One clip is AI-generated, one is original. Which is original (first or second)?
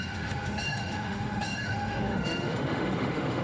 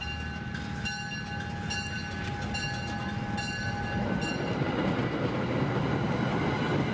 second